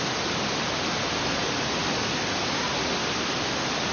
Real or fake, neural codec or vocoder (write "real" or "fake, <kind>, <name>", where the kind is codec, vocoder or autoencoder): real